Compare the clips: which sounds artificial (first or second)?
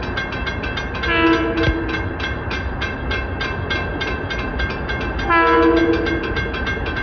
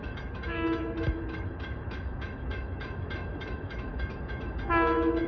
second